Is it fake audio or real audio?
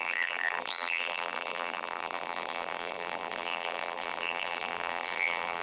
fake